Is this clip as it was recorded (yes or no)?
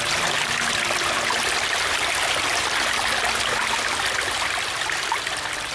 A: yes